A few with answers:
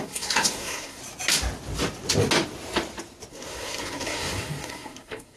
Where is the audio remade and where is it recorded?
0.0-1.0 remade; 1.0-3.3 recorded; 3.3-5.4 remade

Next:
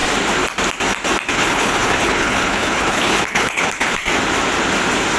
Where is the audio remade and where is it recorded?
0.0-1.3 recorded; 1.3-4.0 remade; 4.0-5.2 recorded

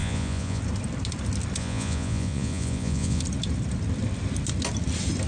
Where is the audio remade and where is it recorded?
0.0-0.6 remade; 0.6-1.6 recorded; 1.6-3.2 remade; 3.2-5.3 recorded

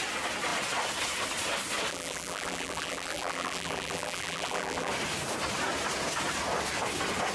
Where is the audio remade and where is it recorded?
0.0-1.9 recorded; 1.9-4.9 remade; 4.9-7.3 recorded

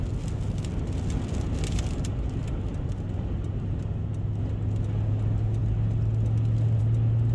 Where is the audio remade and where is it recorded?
0.0-7.3 recorded

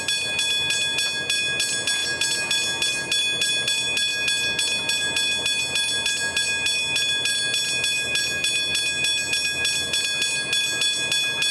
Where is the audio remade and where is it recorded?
0.0-11.5 recorded

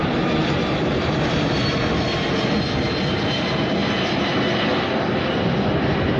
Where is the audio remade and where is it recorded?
0.0-6.2 recorded